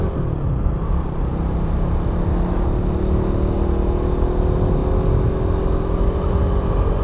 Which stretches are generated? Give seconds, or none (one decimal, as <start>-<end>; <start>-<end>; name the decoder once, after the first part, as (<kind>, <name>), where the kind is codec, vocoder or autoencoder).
none